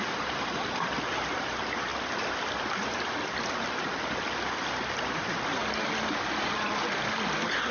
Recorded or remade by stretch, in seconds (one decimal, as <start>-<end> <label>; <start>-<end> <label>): 0.0-7.7 recorded

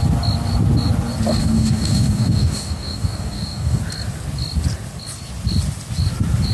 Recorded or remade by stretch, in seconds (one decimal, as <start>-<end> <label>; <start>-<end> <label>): 0.0-1.4 recorded; 1.4-3.8 remade; 3.8-6.5 recorded

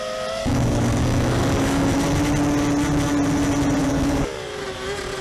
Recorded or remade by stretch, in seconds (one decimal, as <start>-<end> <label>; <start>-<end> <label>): 0.0-0.4 recorded; 0.4-1.9 remade; 1.9-3.8 recorded; 3.8-4.5 remade; 4.5-5.2 recorded

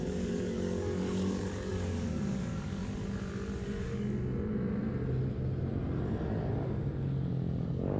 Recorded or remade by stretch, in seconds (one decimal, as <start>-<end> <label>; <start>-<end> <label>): 0.0-2.8 remade; 2.8-7.6 recorded; 7.6-8.0 remade